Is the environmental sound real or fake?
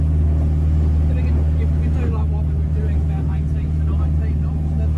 real